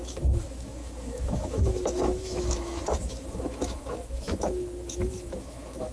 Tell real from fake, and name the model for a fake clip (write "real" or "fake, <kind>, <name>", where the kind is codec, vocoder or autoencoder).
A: fake, autoencoder, DAC-VAE